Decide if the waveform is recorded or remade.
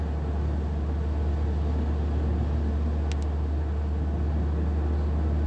recorded